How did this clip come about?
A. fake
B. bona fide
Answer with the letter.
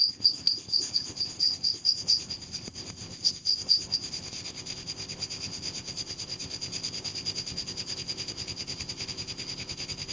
A